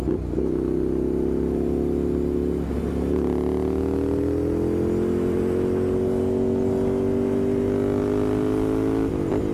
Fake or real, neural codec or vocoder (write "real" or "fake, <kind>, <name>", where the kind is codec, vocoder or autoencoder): real